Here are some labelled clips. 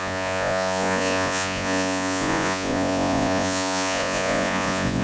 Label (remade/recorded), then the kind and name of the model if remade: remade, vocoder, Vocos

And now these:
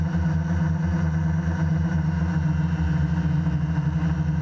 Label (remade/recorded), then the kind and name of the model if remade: recorded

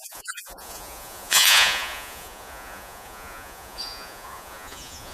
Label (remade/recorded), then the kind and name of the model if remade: remade, vocoder, Vocos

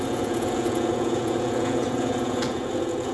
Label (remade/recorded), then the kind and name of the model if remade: remade, vocoder, Vocos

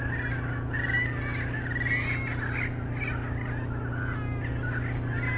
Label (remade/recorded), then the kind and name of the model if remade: recorded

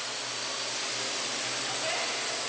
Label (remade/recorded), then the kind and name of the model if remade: recorded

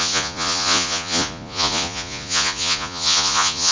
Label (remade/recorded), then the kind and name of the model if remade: remade, vocoder, Vocos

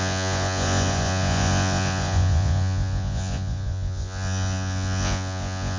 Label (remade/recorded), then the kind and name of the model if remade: remade, vocoder, Vocos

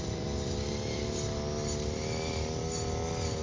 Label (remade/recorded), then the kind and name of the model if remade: recorded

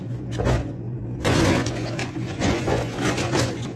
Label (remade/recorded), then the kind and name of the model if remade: remade, vocoder, Vocos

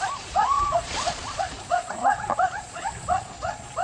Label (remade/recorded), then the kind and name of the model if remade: remade, vocoder, Vocos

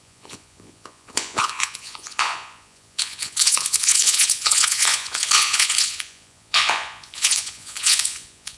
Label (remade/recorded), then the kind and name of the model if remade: remade, vocoder, Vocos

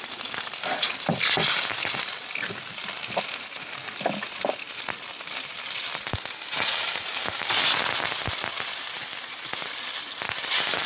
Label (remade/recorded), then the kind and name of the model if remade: recorded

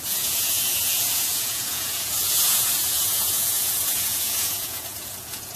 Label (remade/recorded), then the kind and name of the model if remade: remade, vocoder, Vocos